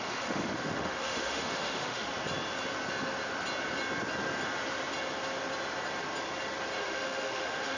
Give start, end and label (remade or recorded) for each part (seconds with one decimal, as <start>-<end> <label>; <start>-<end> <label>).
0.0-2.1 remade; 2.1-6.8 recorded; 6.8-7.8 remade